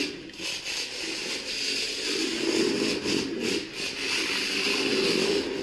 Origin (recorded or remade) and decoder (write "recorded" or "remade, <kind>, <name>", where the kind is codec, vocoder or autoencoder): recorded